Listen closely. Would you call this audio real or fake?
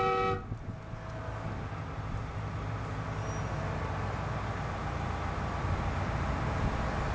real